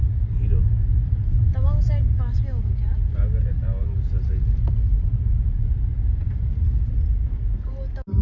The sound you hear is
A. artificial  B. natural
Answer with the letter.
B